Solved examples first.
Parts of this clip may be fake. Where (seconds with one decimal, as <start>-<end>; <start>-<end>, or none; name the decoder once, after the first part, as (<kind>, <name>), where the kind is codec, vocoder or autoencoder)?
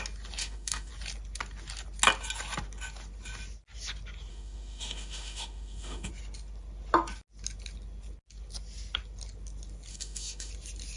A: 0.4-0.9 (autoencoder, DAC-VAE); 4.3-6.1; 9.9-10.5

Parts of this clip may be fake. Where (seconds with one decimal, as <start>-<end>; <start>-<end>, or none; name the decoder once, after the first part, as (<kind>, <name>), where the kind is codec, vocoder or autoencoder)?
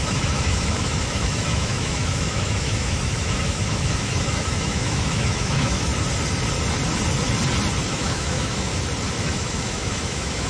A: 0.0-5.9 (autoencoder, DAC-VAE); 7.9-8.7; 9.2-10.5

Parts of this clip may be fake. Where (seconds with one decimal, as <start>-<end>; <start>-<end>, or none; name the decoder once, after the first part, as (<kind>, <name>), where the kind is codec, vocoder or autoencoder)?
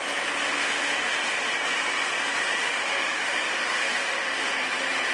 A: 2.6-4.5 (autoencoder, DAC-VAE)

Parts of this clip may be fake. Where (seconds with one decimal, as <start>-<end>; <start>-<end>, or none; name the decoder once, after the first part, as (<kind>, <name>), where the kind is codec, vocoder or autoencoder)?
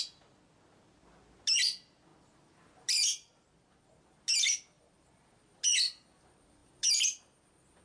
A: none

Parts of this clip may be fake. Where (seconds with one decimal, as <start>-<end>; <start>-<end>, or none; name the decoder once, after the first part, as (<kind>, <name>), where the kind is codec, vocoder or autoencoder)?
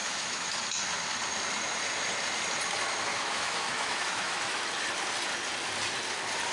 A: 0.0-0.6 (autoencoder, DAC-VAE); 3.1-4.6